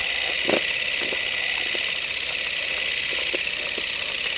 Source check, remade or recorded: recorded